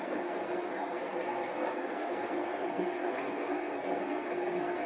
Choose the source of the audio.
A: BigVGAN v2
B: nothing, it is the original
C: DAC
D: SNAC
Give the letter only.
D